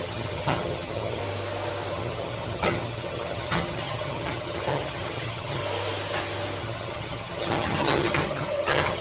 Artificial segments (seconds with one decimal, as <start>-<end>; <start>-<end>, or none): 0.0-1.2; 1.9-5.6; 6.6-9.0

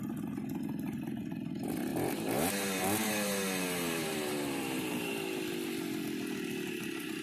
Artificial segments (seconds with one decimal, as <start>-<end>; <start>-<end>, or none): 1.9-5.1

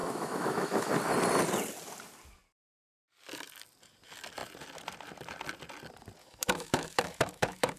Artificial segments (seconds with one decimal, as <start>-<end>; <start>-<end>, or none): 0.0-0.9; 6.2-7.8

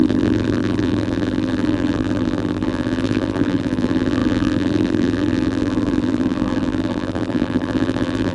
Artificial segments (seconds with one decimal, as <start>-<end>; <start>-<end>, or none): 0.0-8.3

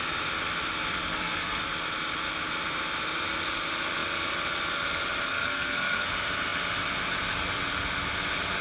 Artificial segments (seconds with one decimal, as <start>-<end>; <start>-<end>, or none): 1.1-1.6; 5.3-6.1